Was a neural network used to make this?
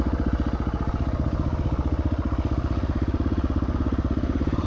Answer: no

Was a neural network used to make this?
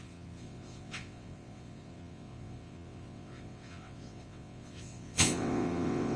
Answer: yes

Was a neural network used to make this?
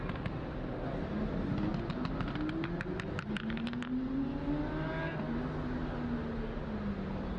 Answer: no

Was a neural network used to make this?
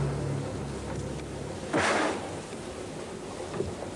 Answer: no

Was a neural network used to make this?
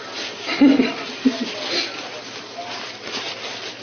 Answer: no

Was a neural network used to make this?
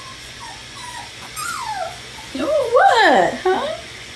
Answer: yes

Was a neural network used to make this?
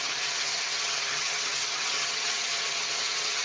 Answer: yes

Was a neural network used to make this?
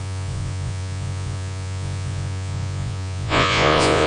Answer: yes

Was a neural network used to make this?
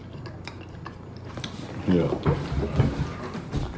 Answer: no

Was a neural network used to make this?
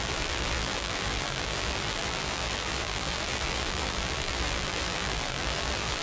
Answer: yes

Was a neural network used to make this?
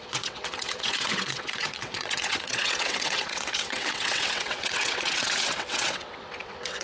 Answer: yes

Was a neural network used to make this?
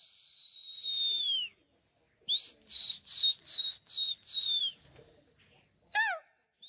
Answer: no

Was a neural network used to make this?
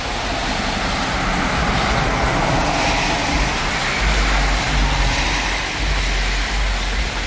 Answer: no